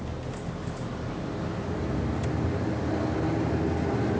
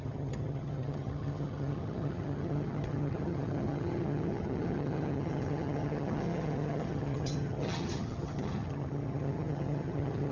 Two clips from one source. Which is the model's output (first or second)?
second